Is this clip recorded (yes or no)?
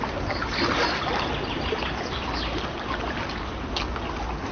yes